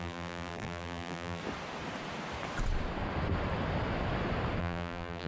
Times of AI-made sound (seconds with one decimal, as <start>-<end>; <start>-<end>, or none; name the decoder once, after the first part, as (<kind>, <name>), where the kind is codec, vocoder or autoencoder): 0.0-1.4 (vocoder, BigVGAN v2); 4.6-5.3